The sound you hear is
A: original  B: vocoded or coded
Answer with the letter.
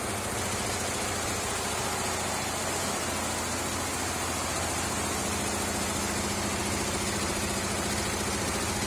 A